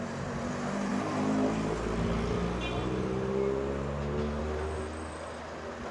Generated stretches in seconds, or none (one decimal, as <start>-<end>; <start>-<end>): none